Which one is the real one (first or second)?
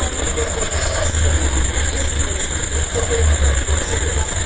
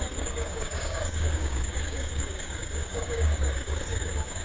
first